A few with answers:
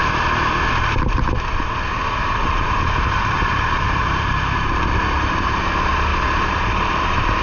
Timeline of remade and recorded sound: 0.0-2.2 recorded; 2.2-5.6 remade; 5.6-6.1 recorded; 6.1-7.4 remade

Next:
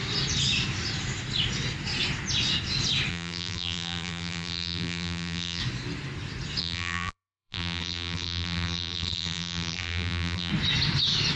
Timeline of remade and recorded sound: 0.0-3.1 recorded; 3.1-5.6 remade; 5.6-6.6 recorded; 6.6-10.5 remade; 10.5-11.4 recorded

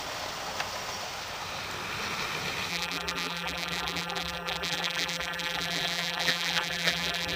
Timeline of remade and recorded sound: 0.0-2.7 recorded; 2.7-7.4 remade

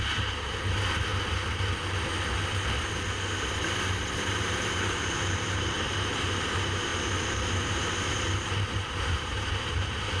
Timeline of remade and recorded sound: 0.0-1.1 remade; 1.1-4.1 recorded; 4.1-10.2 remade

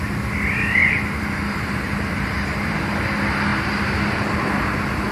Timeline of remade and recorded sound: 0.0-0.8 recorded; 0.8-2.9 remade; 2.9-5.1 recorded

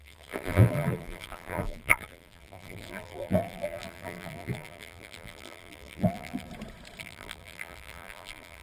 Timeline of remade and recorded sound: 0.0-6.5 remade; 6.5-7.0 recorded; 7.0-8.6 remade

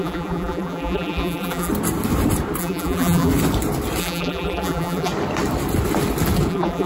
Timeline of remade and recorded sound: 0.0-1.7 remade; 1.7-2.6 recorded; 2.6-3.3 remade; 3.3-4.0 recorded; 4.0-5.1 remade; 5.1-6.5 recorded; 6.5-6.9 remade

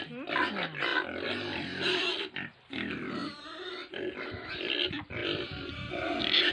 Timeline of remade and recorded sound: 0.0-6.5 recorded